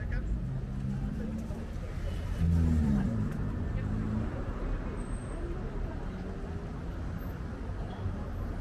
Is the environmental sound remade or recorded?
recorded